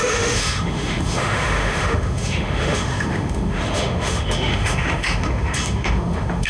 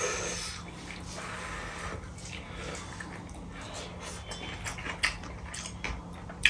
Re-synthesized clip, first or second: first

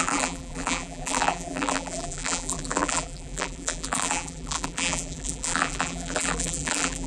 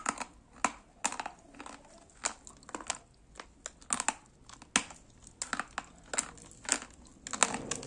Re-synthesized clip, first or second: first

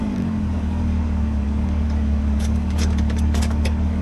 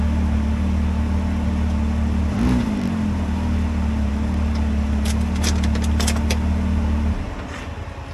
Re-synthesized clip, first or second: first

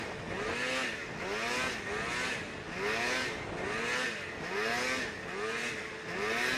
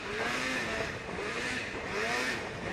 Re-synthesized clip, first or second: second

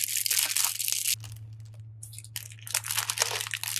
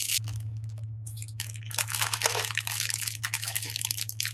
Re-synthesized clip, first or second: second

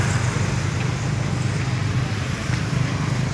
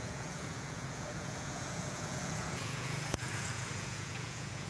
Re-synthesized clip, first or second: second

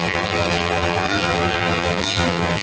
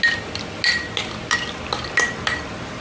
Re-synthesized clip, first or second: first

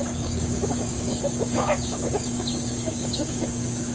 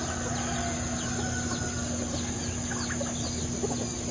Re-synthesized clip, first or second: first